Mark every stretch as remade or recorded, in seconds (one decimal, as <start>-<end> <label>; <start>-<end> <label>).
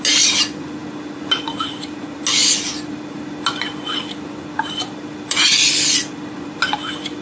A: 0.0-7.2 recorded